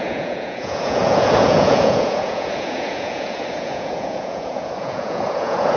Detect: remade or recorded remade